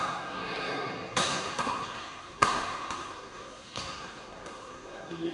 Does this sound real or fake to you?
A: fake